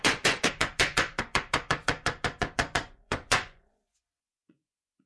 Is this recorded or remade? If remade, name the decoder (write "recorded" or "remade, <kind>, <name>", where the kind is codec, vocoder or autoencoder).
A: remade, vocoder, Vocos